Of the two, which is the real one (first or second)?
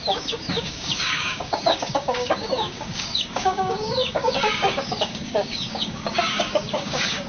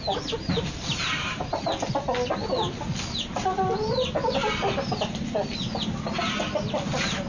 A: second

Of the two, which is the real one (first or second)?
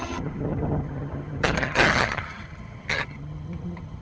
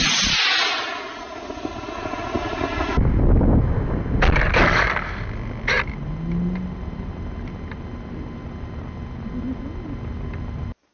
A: second